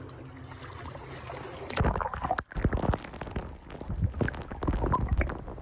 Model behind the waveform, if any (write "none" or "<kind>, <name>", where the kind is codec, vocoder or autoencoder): none